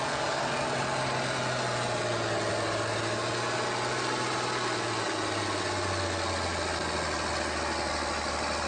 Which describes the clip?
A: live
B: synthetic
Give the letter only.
A